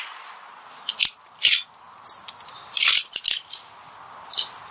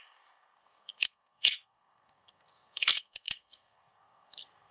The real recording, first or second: first